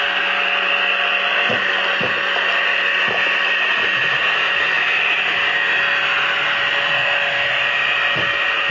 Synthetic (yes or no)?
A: no